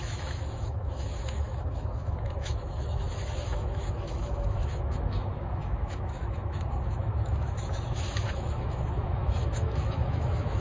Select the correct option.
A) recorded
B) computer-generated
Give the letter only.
B